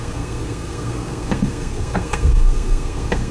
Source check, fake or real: fake